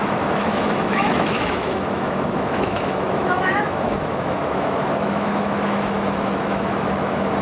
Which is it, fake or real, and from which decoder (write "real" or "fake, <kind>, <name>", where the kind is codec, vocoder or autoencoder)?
fake, autoencoder, DAC-VAE